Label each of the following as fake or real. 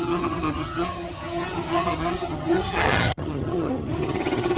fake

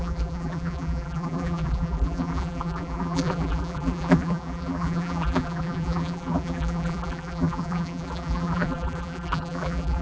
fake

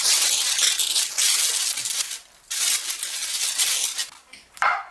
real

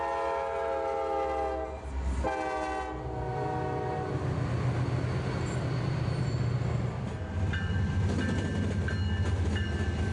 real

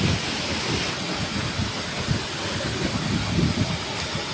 real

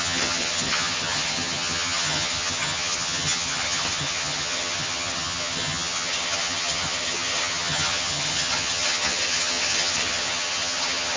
fake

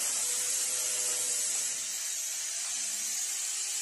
real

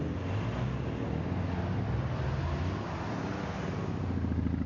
real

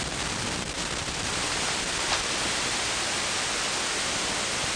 real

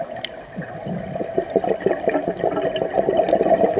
real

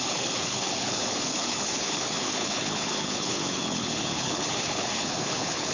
fake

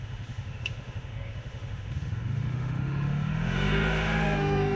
fake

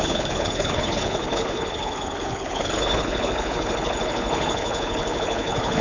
fake